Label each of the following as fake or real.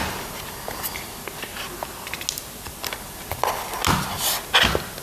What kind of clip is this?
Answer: real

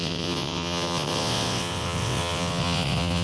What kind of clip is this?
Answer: fake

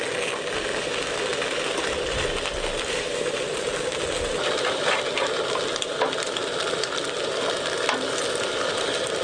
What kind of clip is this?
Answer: real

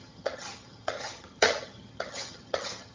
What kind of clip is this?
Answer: fake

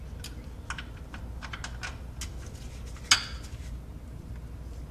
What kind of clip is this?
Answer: real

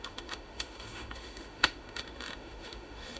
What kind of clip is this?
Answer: fake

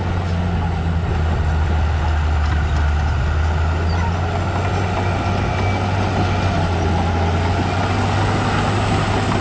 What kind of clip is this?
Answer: real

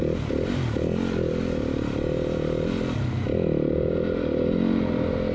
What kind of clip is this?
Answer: real